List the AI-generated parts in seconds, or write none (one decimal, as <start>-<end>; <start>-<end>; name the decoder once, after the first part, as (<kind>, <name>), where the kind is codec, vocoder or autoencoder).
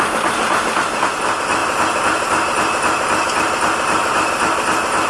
none